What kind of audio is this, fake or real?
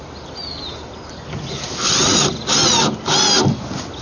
real